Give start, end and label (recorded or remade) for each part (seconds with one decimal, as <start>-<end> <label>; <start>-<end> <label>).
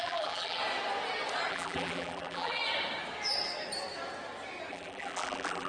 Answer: 0.0-0.6 remade; 0.6-1.5 recorded; 1.5-2.6 remade; 2.6-4.7 recorded; 4.7-5.7 remade